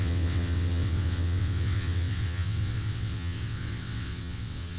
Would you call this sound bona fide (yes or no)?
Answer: no